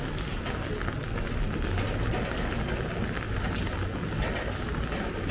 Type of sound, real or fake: real